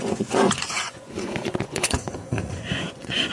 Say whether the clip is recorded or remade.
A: remade